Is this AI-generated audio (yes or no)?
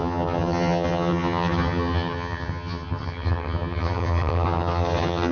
yes